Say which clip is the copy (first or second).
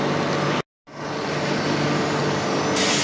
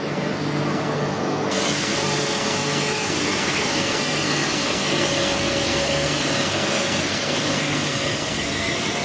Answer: second